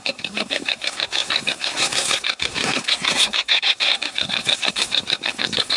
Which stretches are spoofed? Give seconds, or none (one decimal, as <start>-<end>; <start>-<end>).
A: 0.0-5.8